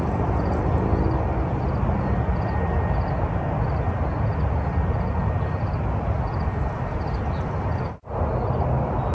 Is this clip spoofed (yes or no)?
no